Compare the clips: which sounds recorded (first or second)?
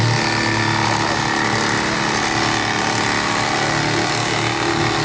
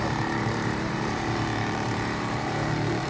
first